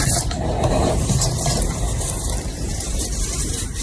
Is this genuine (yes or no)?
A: no